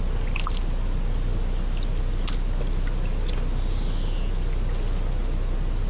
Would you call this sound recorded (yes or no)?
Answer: yes